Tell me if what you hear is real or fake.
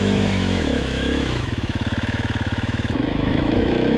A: fake